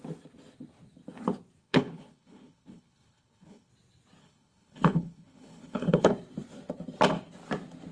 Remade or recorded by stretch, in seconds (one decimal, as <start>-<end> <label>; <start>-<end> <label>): 0.0-1.6 recorded; 1.6-3.7 remade; 3.7-4.2 recorded; 4.2-6.1 remade; 6.1-7.9 recorded